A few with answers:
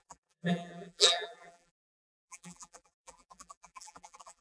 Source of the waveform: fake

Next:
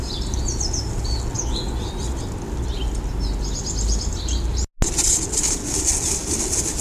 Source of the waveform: real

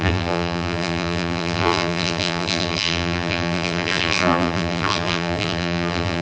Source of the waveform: fake